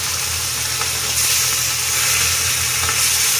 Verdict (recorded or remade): recorded